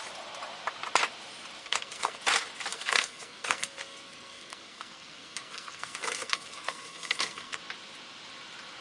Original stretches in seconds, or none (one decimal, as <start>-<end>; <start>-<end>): 0.0-1.6; 2.2-2.7; 7.6-8.8